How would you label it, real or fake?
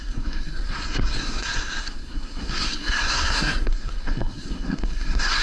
fake